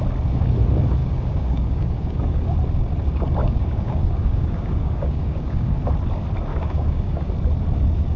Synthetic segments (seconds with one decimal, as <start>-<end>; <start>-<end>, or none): 1.0-2.5; 3.4-5.8; 6.5-7.3